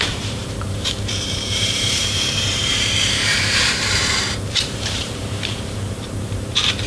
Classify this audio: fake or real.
fake